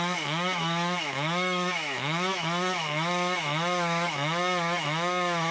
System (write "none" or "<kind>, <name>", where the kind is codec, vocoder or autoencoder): autoencoder, DAC-VAE